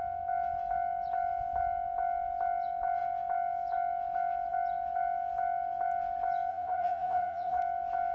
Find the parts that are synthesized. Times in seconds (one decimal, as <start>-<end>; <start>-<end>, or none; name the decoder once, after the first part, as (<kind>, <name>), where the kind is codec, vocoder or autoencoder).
6.5-7.6 (vocoder, Vocos)